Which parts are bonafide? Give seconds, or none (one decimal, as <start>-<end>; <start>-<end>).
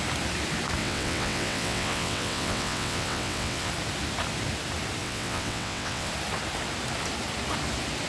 0.0-0.8; 3.7-5.0; 6.1-8.1